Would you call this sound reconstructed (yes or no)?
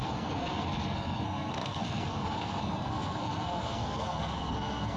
yes